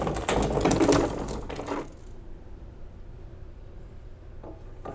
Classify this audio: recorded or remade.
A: recorded